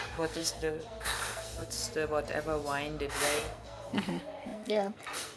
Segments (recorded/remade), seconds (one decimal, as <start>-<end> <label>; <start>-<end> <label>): 0.0-1.8 remade; 1.8-3.1 recorded; 3.1-5.4 remade